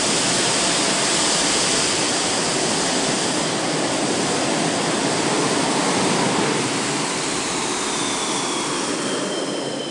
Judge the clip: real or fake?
real